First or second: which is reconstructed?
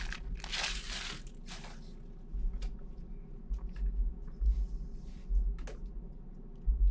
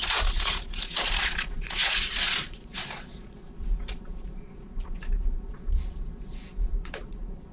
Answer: second